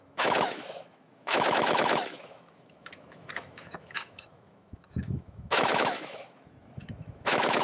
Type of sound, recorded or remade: remade